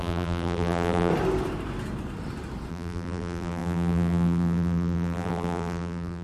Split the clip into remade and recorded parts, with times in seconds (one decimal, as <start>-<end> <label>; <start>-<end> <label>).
0.0-1.1 remade; 1.1-2.7 recorded; 2.7-6.2 remade